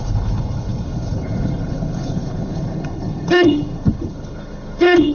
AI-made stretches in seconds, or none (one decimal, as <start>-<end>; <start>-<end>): 0.0-5.1